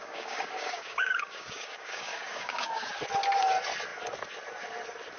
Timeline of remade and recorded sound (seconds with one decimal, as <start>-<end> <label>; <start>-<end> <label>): 0.0-2.9 remade; 2.9-5.2 recorded